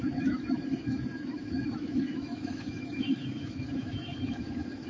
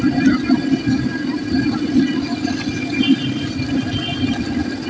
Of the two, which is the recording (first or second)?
second